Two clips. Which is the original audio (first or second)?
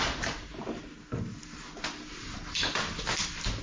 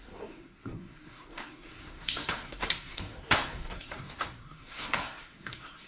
first